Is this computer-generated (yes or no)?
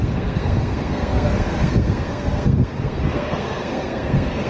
yes